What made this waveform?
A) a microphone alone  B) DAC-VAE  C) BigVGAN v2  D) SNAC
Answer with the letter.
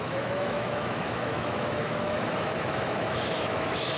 B